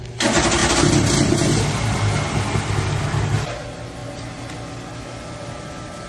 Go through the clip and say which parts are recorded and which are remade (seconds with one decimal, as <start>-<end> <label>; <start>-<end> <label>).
0.0-6.1 recorded

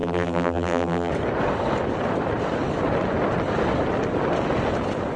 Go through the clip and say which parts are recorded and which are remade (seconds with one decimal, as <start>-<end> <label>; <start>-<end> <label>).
0.0-1.1 remade; 1.1-5.2 recorded